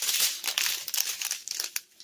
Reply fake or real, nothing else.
real